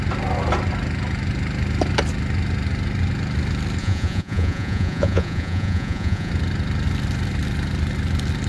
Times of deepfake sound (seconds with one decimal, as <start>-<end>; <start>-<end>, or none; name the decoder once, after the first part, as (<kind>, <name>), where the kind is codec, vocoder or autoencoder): 3.8-6.3 (vocoder, Vocos)